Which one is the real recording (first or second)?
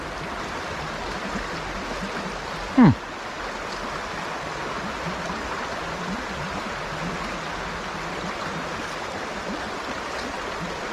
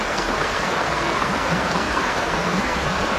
first